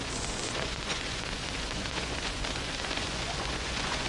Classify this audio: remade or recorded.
remade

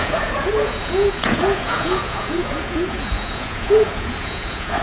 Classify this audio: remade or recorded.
remade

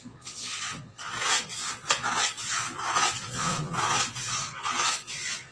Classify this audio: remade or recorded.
remade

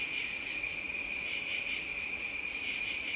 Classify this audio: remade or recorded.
remade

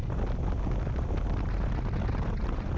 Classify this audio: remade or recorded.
recorded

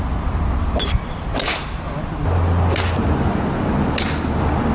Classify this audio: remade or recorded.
recorded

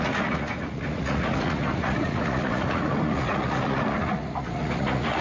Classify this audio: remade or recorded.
remade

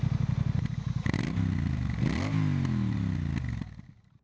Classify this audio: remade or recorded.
recorded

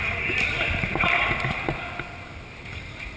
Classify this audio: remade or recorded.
recorded